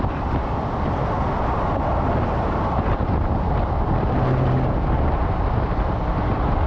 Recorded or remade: recorded